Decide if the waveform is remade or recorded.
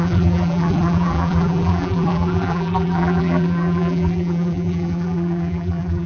remade